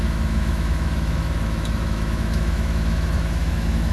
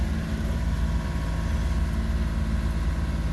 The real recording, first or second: second